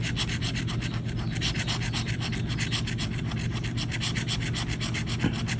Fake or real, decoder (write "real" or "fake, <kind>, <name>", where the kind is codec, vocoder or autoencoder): real